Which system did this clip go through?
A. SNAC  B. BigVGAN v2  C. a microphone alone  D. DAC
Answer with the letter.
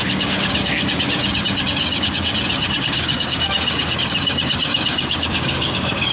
D